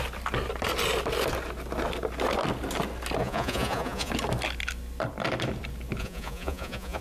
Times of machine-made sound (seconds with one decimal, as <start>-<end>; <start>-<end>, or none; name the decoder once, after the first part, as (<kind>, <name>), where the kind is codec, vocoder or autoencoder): 3.2-4.1 (vocoder, Vocos); 6.0-7.0